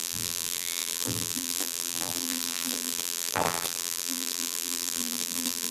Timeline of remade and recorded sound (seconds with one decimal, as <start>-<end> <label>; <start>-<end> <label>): 0.0-5.7 remade